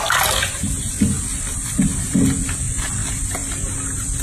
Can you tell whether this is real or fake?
real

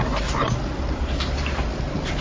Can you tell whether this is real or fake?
real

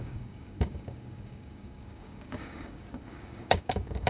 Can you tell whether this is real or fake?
fake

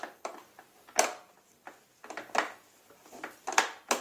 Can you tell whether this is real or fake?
real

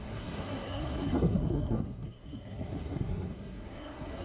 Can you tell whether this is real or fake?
fake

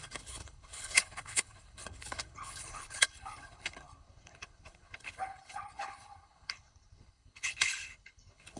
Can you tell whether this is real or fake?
fake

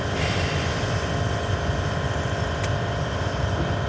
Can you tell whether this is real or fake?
real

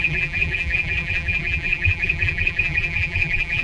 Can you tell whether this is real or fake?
fake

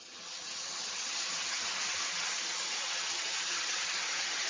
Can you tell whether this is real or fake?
fake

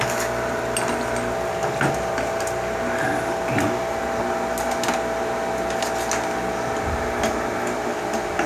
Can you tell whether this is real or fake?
real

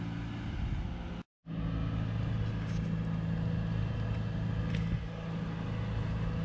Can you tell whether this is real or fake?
real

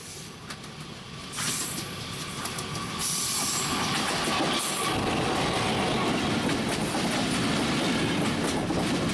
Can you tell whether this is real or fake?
real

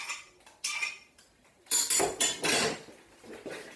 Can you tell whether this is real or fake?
real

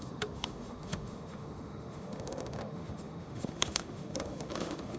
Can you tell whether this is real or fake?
fake